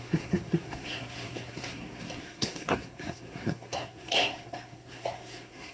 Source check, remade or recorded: remade